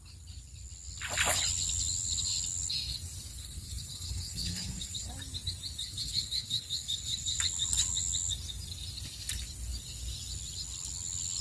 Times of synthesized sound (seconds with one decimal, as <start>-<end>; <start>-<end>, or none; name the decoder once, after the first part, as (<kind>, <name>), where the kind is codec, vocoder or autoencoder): 3.3-5.1 (codec, HILCodec); 5.8-7.4